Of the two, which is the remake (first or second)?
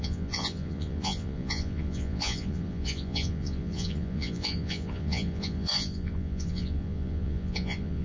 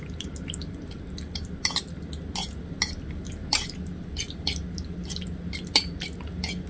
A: first